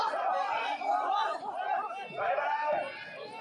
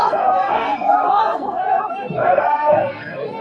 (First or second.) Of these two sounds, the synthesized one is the second